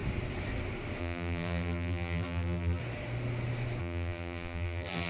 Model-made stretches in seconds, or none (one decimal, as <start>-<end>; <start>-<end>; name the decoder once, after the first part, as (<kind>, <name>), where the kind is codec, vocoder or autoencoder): 1.0-2.8 (vocoder, BigVGAN v2); 3.8-5.1